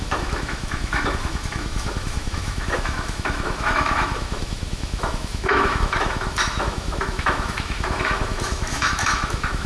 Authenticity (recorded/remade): remade